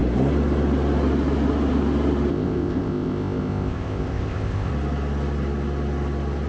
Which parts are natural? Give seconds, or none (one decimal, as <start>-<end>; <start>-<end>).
0.0-2.3; 4.7-6.5